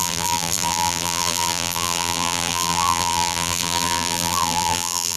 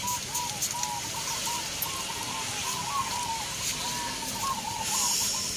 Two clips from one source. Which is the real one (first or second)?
second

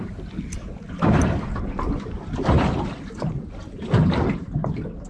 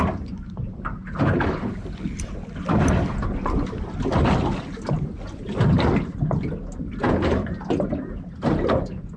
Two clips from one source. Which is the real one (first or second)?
second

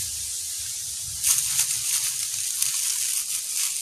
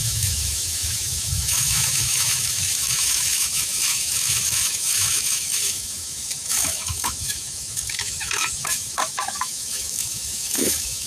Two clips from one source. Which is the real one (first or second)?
first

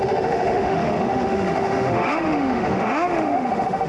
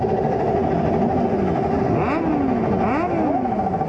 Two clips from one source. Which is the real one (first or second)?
second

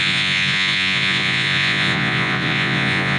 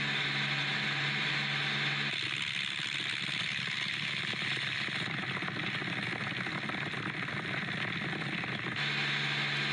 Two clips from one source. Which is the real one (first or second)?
second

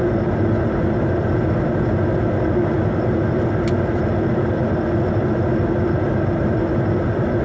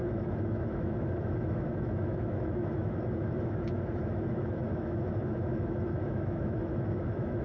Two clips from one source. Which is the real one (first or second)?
first